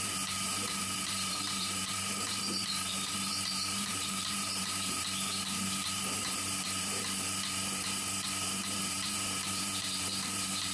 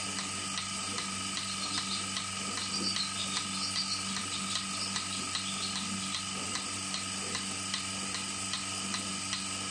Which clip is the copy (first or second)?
first